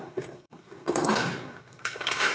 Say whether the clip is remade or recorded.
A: remade